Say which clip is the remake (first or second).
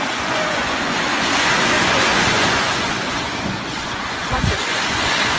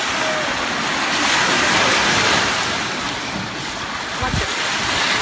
first